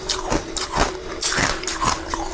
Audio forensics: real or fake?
real